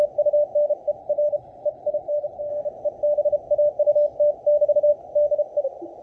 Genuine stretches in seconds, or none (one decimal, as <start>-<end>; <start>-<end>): 0.0-1.0; 2.5-6.0